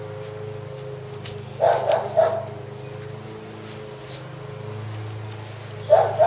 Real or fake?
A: real